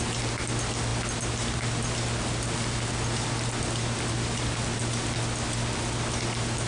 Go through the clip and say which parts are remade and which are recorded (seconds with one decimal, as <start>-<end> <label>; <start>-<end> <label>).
0.0-6.7 recorded